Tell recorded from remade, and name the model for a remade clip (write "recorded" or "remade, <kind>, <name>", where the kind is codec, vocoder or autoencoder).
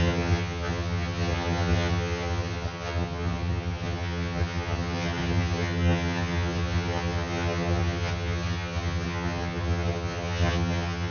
remade, vocoder, HiFi-GAN